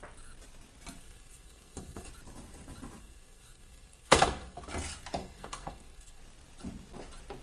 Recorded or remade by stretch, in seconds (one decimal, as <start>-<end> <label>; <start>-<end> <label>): 0.0-1.0 recorded; 1.0-2.1 remade; 2.1-3.0 recorded; 3.0-4.6 remade; 4.6-5.2 recorded; 5.2-6.2 remade; 6.2-7.4 recorded